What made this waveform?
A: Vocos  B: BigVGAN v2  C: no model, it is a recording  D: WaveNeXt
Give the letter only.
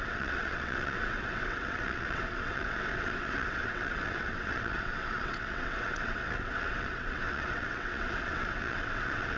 D